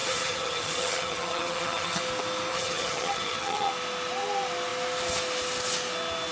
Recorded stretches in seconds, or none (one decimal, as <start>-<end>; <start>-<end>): 2.0-2.5; 3.7-6.3